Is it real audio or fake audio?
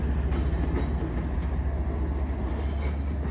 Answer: real